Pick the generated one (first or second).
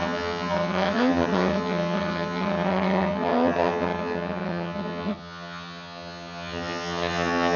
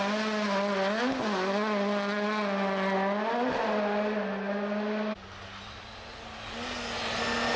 first